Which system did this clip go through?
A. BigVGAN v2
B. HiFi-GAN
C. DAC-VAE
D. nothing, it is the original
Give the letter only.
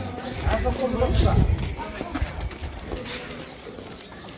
D